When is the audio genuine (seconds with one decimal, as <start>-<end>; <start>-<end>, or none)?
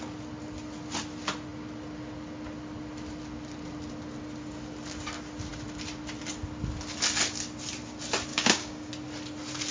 0.0-8.3; 8.9-9.7